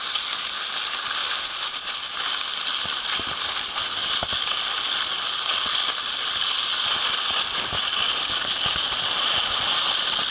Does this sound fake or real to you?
real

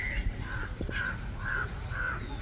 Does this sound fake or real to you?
fake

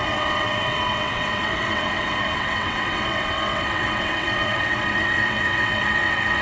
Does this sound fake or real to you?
fake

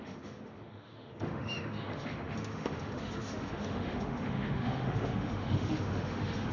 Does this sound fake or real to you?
fake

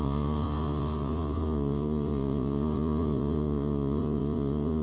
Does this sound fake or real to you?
fake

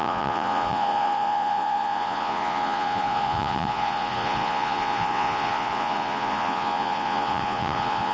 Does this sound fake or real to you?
fake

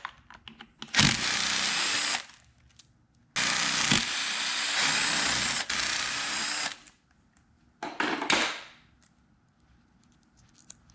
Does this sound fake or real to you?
real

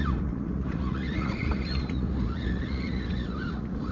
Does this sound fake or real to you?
fake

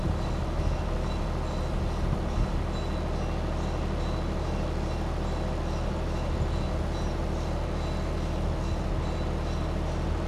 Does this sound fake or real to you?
real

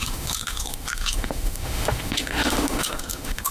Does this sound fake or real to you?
fake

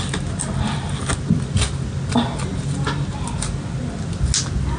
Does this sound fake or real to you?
real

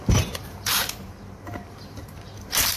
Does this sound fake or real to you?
fake